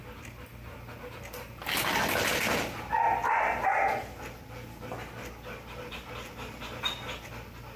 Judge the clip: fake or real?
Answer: real